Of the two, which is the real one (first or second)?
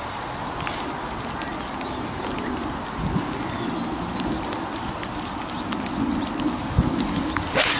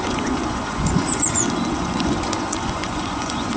first